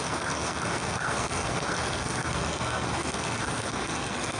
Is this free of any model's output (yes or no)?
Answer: no